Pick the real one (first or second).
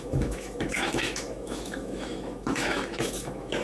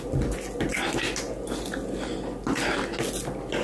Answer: second